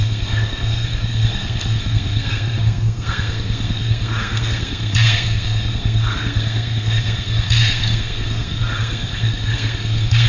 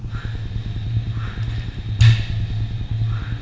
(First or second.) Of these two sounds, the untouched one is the second